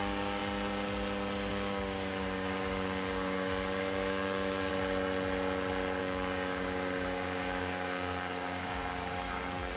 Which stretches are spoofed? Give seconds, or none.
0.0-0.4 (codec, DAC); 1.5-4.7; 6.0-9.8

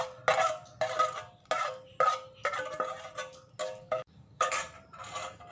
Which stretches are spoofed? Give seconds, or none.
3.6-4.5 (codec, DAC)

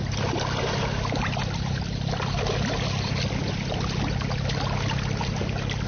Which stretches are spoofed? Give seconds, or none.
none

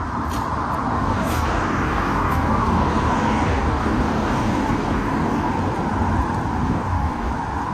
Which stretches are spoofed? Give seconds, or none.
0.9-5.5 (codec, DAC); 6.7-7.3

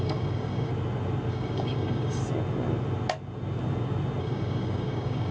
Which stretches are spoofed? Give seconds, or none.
0.0-0.7 (codec, DAC); 1.3-2.2; 4.2-5.3

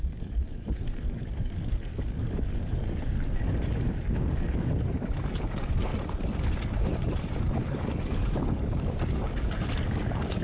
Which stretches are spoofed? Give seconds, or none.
0.0-5.9 (codec, DAC); 7.5-10.4